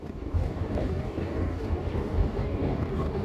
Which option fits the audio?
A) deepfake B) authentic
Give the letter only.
A